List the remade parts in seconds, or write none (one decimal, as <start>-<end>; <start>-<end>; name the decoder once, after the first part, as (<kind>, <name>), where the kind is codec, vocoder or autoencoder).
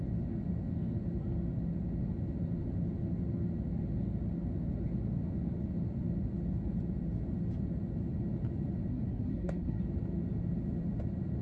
8.9-9.8 (codec, SNAC)